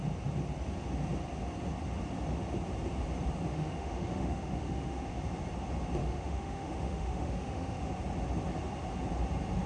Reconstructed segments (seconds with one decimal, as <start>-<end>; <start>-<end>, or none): 3.5-5.1; 6.0-7.9